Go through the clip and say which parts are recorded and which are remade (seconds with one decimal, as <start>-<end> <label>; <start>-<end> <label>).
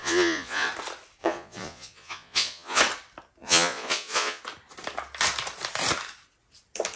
0.0-0.7 remade; 0.7-1.2 recorded; 1.2-2.8 remade; 2.8-3.4 recorded; 3.4-4.4 remade; 4.4-7.0 recorded